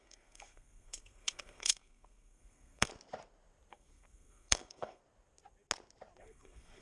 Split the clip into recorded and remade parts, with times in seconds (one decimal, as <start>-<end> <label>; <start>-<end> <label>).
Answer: 0.0-2.9 remade; 2.9-3.7 recorded; 3.7-5.0 remade; 5.0-6.2 recorded; 6.2-6.8 remade